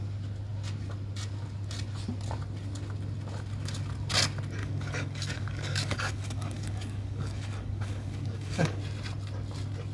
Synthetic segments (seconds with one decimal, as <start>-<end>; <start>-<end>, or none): 4.6-8.8